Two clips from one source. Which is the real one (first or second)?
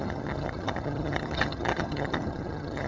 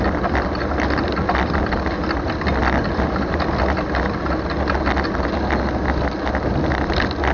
second